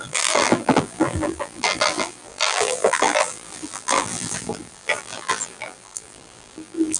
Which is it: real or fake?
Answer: fake